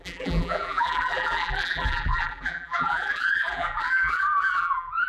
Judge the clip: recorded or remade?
remade